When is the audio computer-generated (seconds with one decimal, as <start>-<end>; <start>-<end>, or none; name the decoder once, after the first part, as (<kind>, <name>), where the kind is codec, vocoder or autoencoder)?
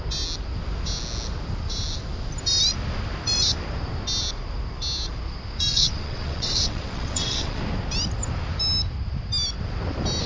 5.7-7.6 (vocoder, WaveNeXt)